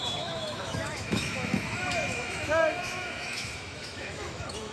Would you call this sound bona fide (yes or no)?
no